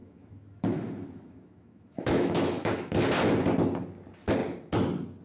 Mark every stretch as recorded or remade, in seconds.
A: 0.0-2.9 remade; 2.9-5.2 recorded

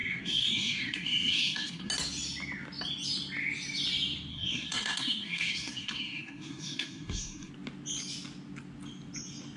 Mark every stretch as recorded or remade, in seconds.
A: 0.0-1.9 remade; 1.9-4.3 recorded; 4.3-7.5 remade; 7.5-9.6 recorded

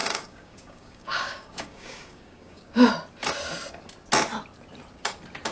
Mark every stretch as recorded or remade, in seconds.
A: 0.0-2.9 remade; 2.9-5.5 recorded

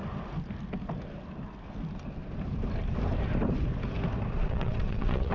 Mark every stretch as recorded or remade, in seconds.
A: 0.0-4.4 recorded; 4.4-5.3 remade